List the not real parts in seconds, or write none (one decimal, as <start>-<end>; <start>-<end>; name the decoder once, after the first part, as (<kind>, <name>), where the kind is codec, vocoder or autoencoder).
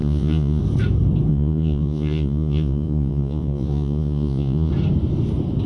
0.0-0.6 (vocoder, Vocos); 1.3-4.7